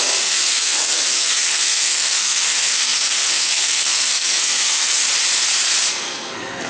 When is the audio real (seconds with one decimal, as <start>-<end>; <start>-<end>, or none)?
5.0-5.9